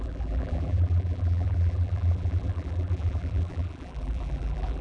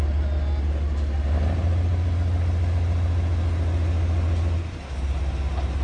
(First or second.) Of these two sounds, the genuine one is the second